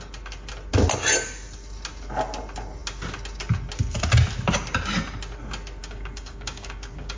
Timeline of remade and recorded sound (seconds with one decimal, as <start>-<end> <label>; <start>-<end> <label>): 0.0-5.8 recorded; 5.8-7.2 remade